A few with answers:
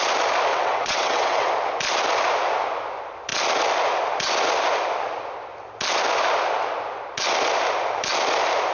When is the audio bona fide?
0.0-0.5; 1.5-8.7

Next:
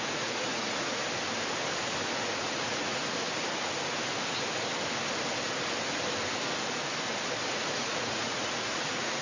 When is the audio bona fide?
1.0-2.3; 3.0-7.5

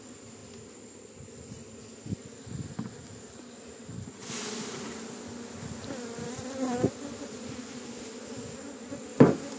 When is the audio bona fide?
0.0-9.6

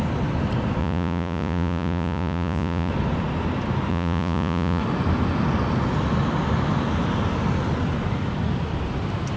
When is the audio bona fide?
0.0-0.8; 2.9-3.9; 4.8-9.4

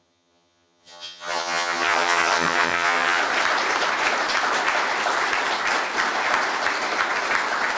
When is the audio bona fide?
3.2-7.8

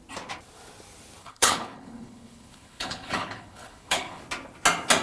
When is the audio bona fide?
0.0-1.2; 4.2-5.0

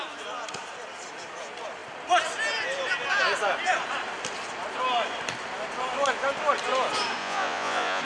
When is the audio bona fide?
0.0-7.2